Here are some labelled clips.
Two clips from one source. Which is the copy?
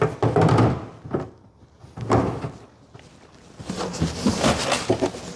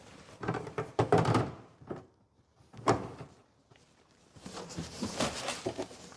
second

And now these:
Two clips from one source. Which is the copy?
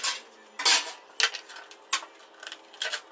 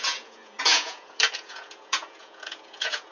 second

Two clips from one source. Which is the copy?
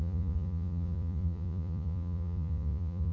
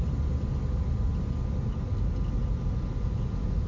first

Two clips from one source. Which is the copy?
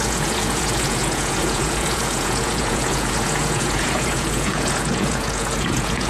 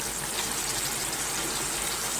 first